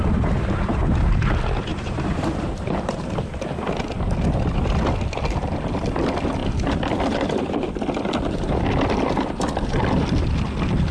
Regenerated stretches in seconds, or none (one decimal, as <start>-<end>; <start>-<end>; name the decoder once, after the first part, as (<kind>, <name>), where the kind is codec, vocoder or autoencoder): 1.7-3.1 (vocoder, BigVGAN v2)